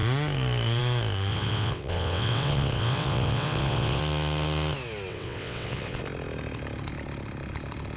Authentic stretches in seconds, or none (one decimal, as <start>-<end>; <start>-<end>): 0.0-1.3; 4.0-5.1; 6.0-8.0